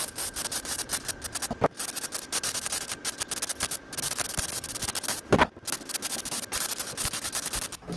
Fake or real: fake